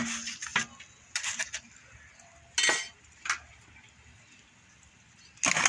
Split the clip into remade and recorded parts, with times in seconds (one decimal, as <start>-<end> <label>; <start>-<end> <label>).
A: 0.0-5.7 recorded

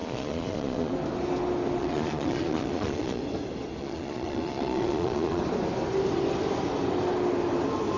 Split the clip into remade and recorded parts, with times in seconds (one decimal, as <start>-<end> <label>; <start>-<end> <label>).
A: 0.0-0.9 remade; 0.9-1.8 recorded; 1.8-3.2 remade; 3.2-3.8 recorded; 3.8-5.4 remade; 5.4-8.0 recorded

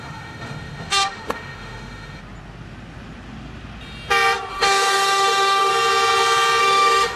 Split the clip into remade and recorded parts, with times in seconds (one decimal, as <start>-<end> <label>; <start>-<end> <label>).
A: 0.0-2.2 remade; 2.2-4.5 recorded; 4.5-5.7 remade; 5.7-6.6 recorded; 6.6-7.2 remade

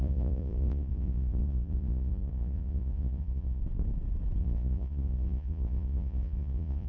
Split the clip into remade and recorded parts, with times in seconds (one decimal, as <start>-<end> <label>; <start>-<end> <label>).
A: 0.0-3.6 remade; 3.6-4.4 recorded; 4.4-6.9 remade

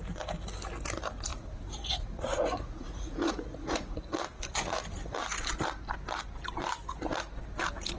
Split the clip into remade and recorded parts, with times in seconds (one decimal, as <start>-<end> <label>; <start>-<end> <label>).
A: 0.0-1.3 recorded; 1.3-4.0 remade; 4.0-8.0 recorded